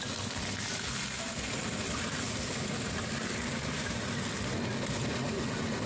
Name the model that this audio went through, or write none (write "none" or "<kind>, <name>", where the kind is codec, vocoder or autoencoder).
none